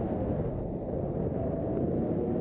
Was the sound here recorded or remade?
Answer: recorded